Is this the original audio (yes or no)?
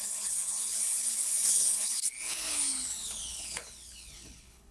no